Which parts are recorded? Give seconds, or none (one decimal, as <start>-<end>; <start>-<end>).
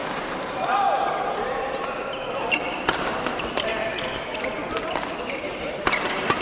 3.7-5.2